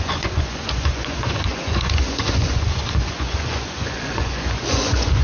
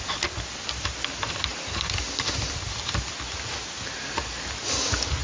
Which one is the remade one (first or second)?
first